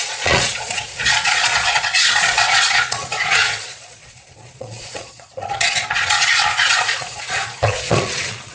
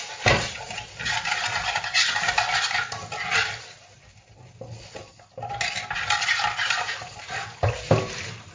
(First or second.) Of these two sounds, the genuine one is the second